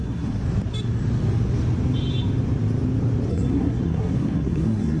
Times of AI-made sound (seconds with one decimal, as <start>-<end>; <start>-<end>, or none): 0.0-0.4; 3.3-5.0